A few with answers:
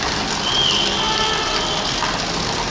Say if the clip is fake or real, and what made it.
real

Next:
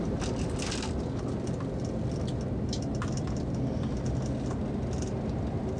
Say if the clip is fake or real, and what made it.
real